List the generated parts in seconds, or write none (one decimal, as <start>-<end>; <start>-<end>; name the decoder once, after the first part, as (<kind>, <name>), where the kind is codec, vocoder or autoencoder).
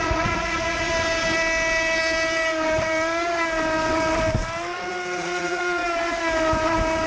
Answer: 0.0-0.9 (vocoder, Vocos); 5.2-5.8